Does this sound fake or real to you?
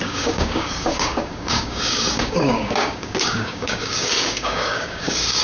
fake